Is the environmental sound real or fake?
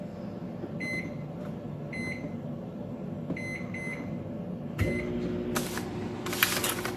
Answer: real